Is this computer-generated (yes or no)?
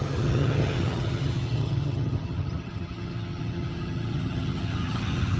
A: yes